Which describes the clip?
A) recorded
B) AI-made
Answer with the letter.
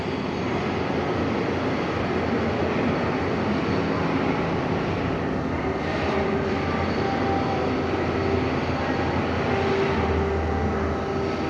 A